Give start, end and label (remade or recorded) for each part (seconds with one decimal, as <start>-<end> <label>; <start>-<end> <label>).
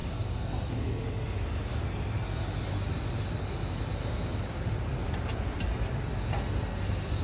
0.0-4.3 recorded; 4.3-5.7 remade; 5.7-7.2 recorded